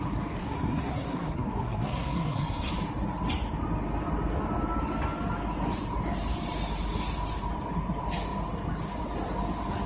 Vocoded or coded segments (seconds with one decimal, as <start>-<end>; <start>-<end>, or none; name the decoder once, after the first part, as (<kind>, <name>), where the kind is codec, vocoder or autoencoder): 0.4-2.7 (codec, SNAC)